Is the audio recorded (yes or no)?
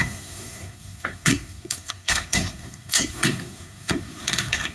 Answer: no